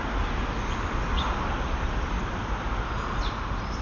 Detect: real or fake real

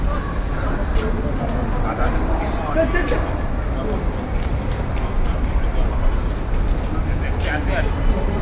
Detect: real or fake real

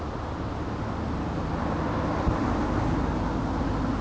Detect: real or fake real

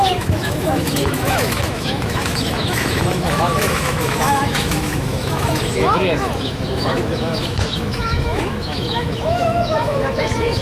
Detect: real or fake fake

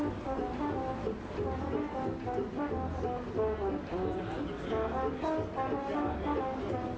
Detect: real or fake real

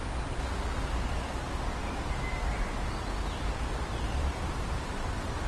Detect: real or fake real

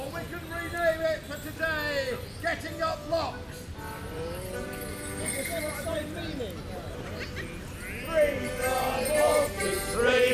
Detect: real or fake real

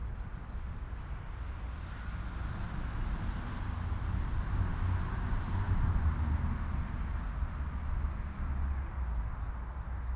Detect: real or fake real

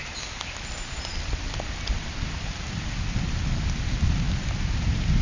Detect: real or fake real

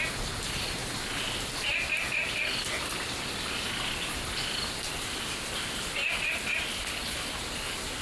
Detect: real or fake real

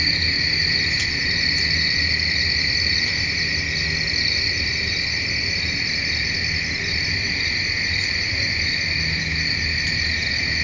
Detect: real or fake real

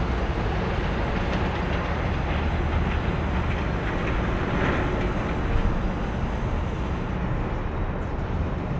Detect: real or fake real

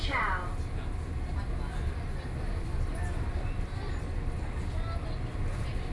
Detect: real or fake real